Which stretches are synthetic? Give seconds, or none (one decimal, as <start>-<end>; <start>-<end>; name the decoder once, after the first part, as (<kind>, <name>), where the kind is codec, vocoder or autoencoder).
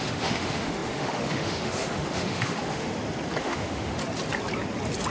0.0-2.9 (autoencoder, DAC-VAE); 3.4-4.0